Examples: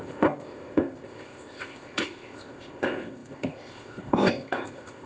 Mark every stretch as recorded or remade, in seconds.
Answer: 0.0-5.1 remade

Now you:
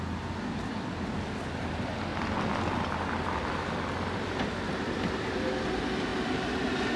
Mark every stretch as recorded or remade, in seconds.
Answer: 0.0-7.0 recorded

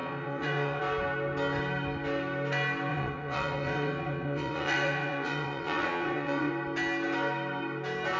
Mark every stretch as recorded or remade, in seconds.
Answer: 0.0-0.8 remade; 0.8-2.9 recorded; 2.9-6.5 remade; 6.5-8.2 recorded

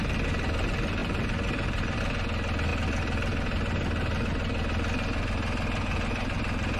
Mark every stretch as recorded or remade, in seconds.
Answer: 0.0-1.0 recorded; 1.0-2.0 remade; 2.0-6.8 recorded

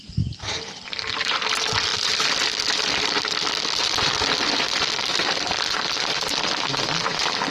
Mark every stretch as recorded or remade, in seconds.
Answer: 0.0-1.9 recorded; 1.9-6.4 remade; 6.4-7.5 recorded

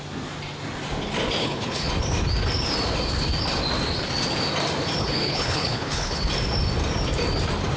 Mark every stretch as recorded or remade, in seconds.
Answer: 0.0-1.4 recorded; 1.4-1.9 remade; 1.9-5.0 recorded; 5.0-6.3 remade; 6.3-7.8 recorded

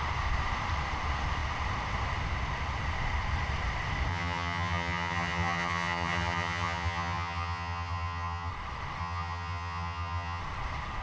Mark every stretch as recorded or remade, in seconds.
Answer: 0.0-4.1 recorded; 4.1-8.5 remade; 8.5-9.0 recorded; 9.0-10.4 remade; 10.4-11.0 recorded